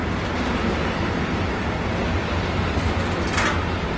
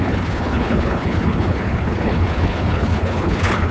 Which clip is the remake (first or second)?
second